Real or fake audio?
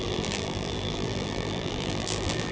fake